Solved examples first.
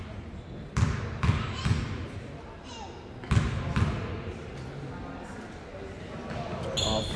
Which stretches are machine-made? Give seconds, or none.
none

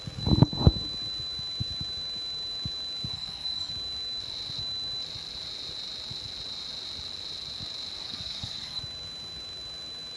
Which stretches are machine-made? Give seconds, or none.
3.1-3.7; 8.0-8.8